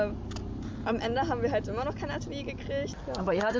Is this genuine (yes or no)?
yes